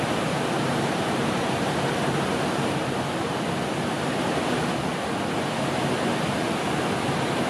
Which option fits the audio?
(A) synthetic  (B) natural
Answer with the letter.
B